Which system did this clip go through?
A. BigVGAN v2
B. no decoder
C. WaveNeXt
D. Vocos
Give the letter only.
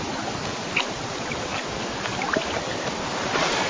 B